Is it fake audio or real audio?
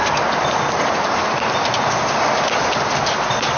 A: real